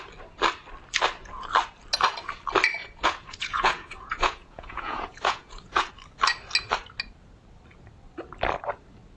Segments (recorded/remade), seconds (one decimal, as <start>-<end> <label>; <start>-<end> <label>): 0.0-2.8 recorded; 2.8-5.9 remade; 5.9-9.2 recorded